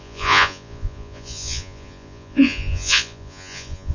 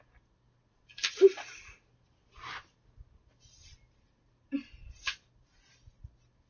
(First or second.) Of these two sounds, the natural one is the second